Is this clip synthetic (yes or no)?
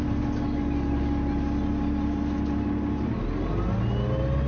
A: no